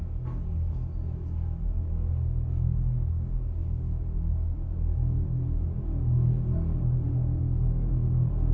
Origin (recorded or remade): recorded